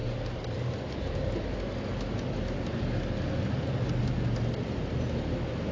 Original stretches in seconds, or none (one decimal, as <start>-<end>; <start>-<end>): 0.0-5.7